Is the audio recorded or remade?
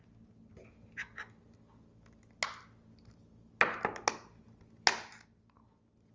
recorded